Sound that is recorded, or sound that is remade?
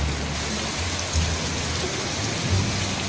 recorded